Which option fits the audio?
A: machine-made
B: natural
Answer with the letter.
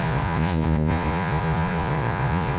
A